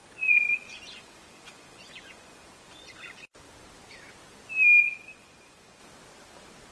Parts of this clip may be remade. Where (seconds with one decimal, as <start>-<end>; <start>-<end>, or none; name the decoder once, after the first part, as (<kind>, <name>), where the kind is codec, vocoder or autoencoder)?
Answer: 0.0-3.3 (vocoder, Vocos); 4.8-5.8